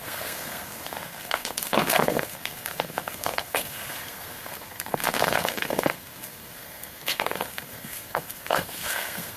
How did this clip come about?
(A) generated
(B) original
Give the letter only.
A